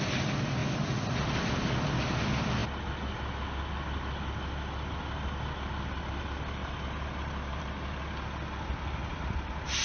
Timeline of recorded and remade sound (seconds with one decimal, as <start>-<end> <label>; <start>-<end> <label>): 0.0-6.6 recorded; 6.6-7.6 remade; 7.6-9.8 recorded